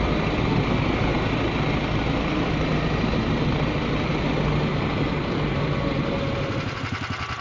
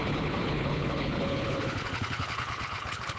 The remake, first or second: second